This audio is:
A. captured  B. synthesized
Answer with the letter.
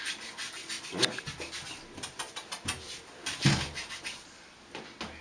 A